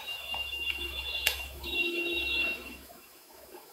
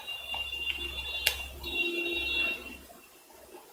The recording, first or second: second